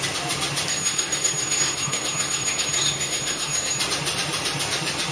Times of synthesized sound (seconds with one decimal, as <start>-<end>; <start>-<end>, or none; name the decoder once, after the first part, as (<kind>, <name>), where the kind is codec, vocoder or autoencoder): 0.7-3.8 (codec, SNAC)